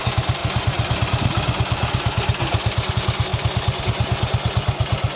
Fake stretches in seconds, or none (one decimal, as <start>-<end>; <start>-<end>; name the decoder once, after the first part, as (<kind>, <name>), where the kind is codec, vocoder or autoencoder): none